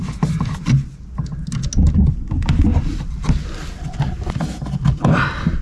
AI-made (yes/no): no